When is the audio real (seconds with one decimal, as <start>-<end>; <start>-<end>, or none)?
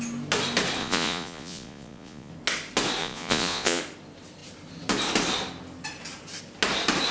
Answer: 0.0-0.8; 2.3-3.0; 3.8-7.1